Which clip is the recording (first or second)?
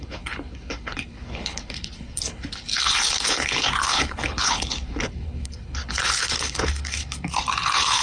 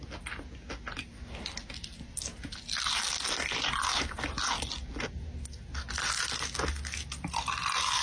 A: second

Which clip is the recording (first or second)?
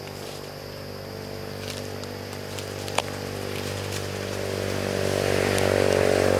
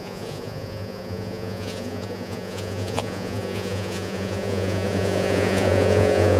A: first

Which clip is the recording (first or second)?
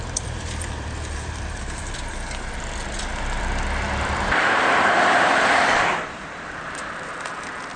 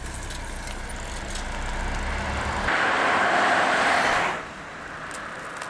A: second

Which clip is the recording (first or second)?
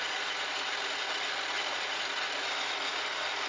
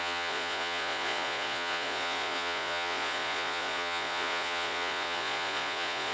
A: first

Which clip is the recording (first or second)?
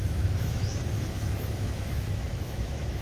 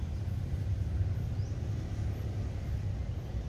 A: second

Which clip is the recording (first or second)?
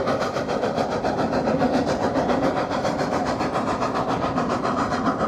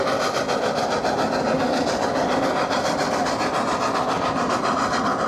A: second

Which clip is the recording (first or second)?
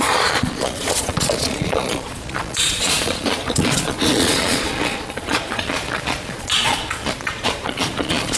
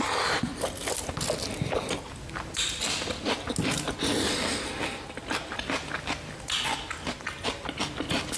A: second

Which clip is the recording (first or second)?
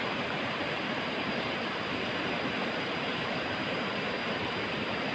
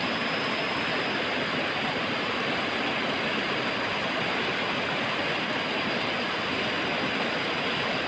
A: second